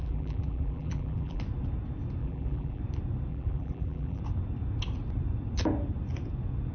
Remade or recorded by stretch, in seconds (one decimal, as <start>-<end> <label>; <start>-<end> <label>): 0.0-1.4 remade; 1.4-2.2 recorded; 2.2-2.8 remade; 2.8-3.3 recorded; 3.3-4.2 remade; 4.2-6.7 recorded